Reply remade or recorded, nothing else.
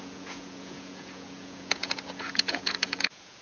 remade